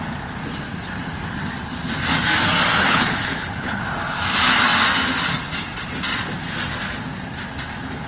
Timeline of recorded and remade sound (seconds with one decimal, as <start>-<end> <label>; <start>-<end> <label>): 0.0-2.8 recorded; 2.8-3.8 remade; 3.8-8.1 recorded